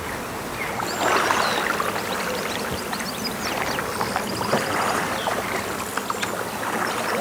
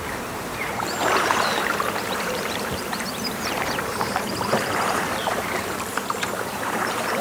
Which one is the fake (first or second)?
second